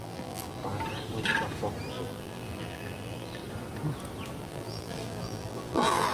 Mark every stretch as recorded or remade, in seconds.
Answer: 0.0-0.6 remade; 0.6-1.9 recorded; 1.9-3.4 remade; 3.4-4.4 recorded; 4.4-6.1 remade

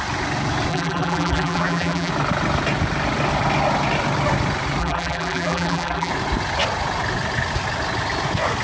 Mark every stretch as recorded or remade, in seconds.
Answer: 0.0-0.7 recorded; 0.7-2.1 remade; 2.1-4.8 recorded; 4.8-6.1 remade; 6.1-8.6 recorded

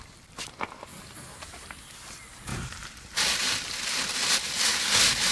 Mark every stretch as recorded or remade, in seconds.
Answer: 0.0-0.9 recorded; 0.9-2.0 remade; 2.0-2.5 recorded; 2.5-3.7 remade; 3.7-5.3 recorded

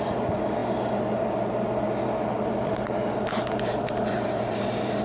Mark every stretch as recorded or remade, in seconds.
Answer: 0.0-0.6 remade; 0.6-3.6 recorded; 3.6-5.0 remade

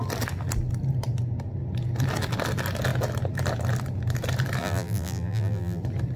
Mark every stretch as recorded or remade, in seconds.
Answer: 0.0-4.6 recorded; 4.6-5.8 remade; 5.8-6.2 recorded